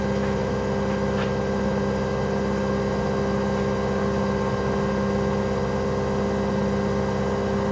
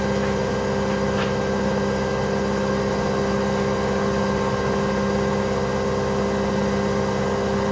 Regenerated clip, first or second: second